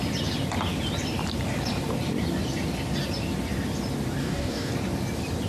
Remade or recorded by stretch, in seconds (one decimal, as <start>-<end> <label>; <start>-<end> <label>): 0.0-4.2 recorded; 4.2-4.7 remade; 4.7-5.5 recorded